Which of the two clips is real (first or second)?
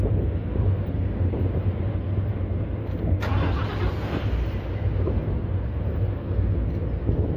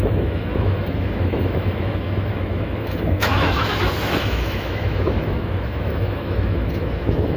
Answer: first